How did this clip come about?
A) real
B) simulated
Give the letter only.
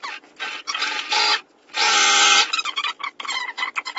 A